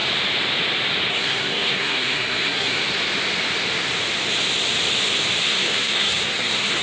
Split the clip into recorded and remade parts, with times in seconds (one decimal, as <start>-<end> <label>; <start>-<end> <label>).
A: 0.0-1.1 recorded; 1.1-2.8 remade; 2.8-5.4 recorded; 5.4-6.8 remade